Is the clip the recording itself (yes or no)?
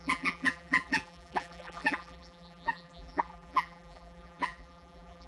no